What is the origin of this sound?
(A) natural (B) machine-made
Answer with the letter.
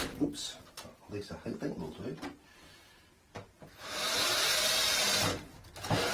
B